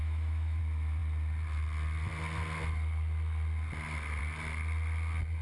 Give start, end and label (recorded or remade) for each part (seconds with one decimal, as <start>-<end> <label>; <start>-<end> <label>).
0.0-0.6 remade; 0.6-5.4 recorded